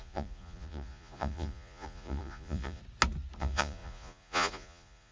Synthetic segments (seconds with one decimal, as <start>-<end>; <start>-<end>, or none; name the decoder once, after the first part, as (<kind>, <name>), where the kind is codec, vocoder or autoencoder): 0.0-2.8 (vocoder, Vocos); 3.4-5.1